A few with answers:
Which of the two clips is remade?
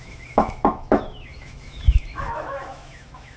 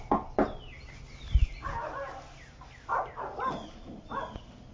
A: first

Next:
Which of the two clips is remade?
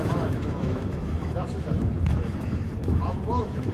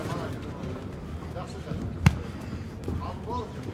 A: first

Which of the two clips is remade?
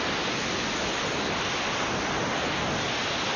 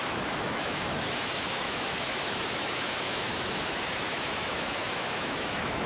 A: second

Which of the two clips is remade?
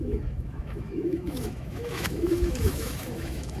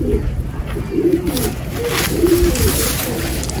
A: first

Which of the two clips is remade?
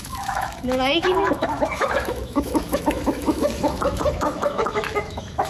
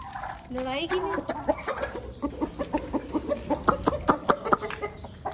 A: first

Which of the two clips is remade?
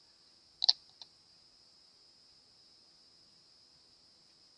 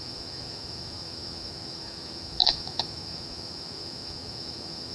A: second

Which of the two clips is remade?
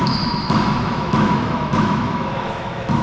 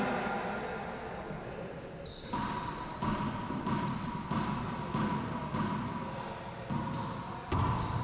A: first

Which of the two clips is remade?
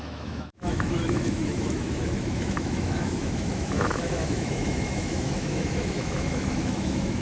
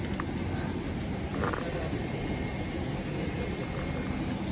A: first